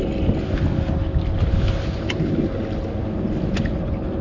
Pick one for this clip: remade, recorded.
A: recorded